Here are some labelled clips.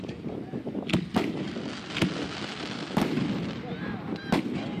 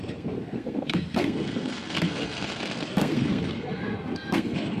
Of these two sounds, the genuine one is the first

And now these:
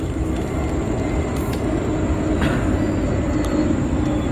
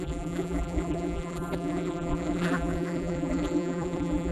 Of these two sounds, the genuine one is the first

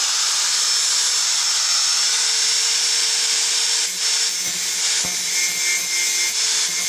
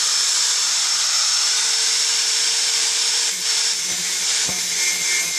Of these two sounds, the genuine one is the first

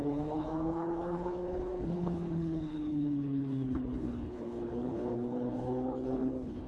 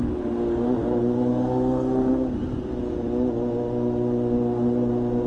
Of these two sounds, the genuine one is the second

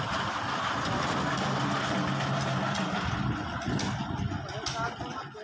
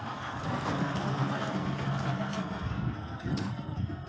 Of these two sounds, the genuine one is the first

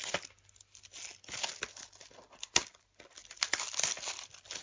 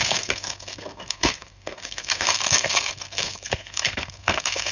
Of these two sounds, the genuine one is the first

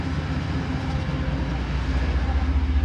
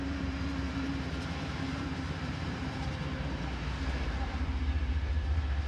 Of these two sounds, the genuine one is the first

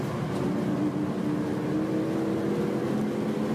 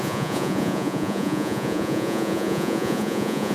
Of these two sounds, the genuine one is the first